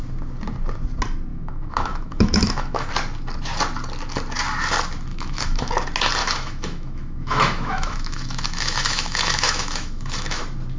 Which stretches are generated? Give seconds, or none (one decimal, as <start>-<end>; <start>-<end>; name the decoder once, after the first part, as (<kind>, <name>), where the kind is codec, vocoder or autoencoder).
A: 1.3-2.9 (autoencoder, DAC-VAE); 5.1-5.7; 6.2-10.4